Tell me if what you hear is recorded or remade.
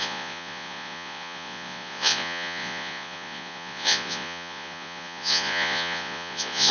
remade